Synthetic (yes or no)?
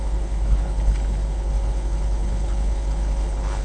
yes